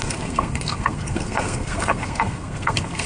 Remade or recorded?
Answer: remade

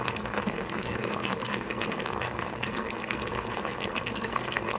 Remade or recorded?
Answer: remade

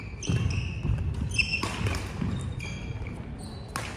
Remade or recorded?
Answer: recorded